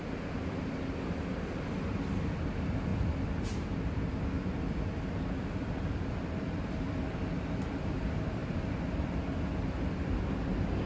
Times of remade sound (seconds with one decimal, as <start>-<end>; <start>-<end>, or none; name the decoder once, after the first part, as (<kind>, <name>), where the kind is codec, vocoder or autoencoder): none